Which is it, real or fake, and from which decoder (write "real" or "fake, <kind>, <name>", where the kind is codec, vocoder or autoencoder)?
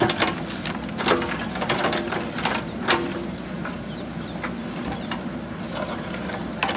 real